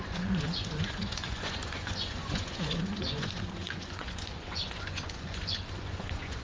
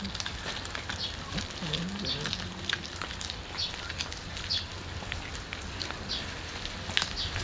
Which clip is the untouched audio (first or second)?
second